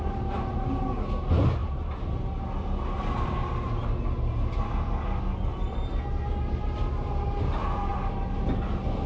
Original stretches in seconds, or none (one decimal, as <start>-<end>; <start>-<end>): 0.0-9.1